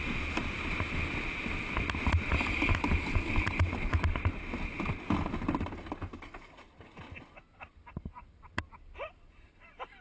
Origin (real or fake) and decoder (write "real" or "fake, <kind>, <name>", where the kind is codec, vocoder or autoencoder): real